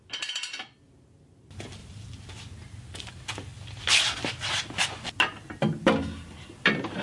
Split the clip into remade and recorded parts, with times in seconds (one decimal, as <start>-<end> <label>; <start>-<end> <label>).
0.0-7.0 recorded